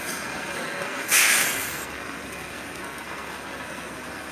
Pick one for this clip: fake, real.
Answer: fake